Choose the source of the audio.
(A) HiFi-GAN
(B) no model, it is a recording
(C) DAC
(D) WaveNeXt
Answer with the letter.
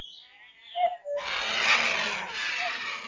B